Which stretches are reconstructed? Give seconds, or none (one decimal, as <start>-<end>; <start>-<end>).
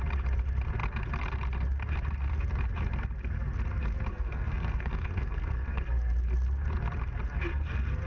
4.1-5.8